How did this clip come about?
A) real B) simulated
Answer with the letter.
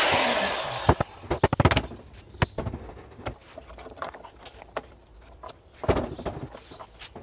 A